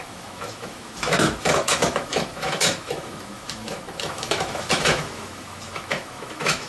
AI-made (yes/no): yes